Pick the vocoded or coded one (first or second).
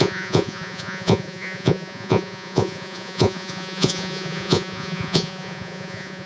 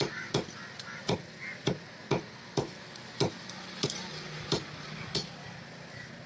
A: first